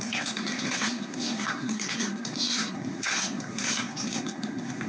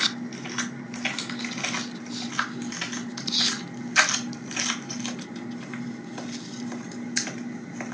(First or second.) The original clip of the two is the second